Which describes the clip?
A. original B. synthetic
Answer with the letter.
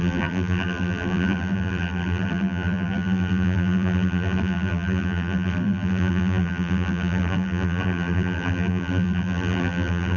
B